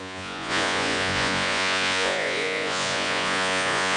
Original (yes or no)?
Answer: no